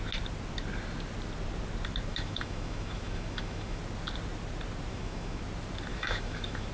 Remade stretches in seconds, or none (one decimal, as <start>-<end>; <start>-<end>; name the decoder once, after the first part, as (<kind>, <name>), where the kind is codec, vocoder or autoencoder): 2.1-3.8 (autoencoder, DAC-VAE); 4.9-5.4; 5.9-6.7